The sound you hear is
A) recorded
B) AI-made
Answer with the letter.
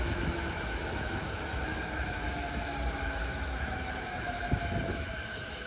B